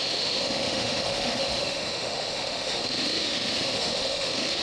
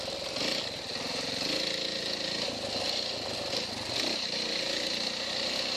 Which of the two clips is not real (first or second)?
first